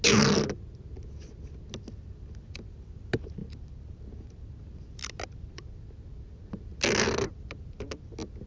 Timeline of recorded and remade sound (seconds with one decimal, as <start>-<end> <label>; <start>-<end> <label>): 0.0-8.5 recorded